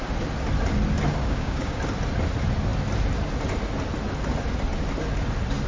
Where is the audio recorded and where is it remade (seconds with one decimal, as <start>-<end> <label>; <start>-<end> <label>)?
0.0-1.2 recorded; 1.2-1.8 remade; 1.8-5.7 recorded